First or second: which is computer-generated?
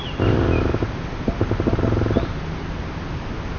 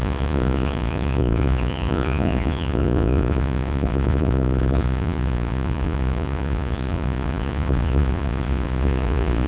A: second